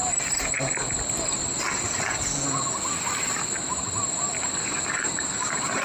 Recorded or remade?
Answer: recorded